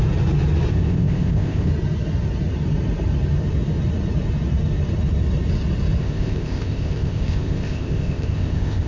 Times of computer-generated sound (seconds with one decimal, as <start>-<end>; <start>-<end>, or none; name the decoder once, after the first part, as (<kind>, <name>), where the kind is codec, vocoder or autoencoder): 0.7-1.7 (codec, ZipCodec); 6.0-8.9

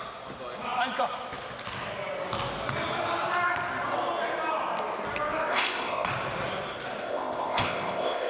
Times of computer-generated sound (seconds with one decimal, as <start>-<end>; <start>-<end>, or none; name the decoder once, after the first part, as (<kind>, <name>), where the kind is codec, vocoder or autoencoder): 5.5-6.1 (codec, ZipCodec); 7.0-8.3